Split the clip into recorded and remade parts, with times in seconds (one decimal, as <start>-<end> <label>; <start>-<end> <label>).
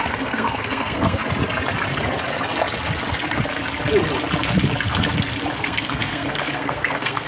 0.0-1.2 remade; 1.2-5.6 recorded; 5.6-7.3 remade